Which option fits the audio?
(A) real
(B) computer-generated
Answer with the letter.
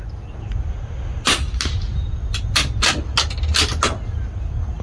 A